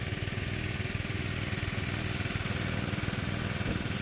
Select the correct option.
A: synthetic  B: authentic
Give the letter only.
B